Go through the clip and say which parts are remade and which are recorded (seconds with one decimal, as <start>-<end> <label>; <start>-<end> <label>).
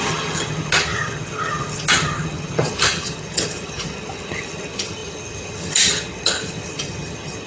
0.0-7.5 remade